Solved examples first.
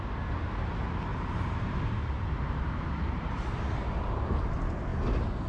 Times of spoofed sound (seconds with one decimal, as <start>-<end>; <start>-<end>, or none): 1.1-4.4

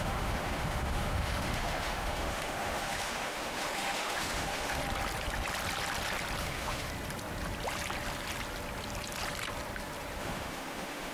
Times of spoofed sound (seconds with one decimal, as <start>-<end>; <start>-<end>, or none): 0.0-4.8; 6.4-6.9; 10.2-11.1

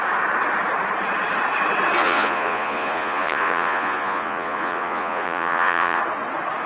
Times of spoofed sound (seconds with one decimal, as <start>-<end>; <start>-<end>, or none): 2.0-6.0

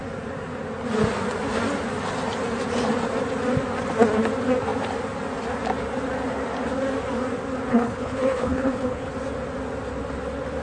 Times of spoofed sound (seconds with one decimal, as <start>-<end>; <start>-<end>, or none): 7.7-9.1

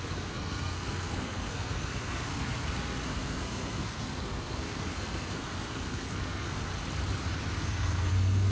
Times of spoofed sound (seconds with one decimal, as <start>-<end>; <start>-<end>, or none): 0.0-6.7; 7.6-8.5

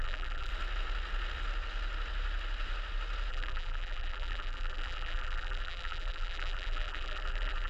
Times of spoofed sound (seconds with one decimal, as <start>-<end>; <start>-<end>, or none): 0.0-0.5; 3.3-7.7

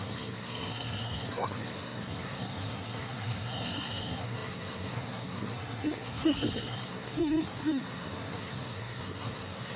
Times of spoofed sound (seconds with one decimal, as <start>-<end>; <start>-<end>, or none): 0.0-9.8